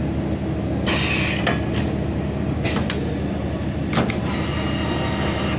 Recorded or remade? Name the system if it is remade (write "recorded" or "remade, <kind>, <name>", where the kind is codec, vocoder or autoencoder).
recorded